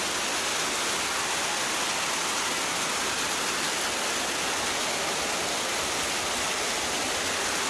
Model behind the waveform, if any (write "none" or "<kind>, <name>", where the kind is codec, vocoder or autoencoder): none